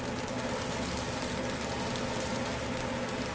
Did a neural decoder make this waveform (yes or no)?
no